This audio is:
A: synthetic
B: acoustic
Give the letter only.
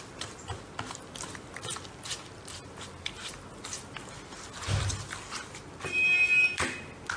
B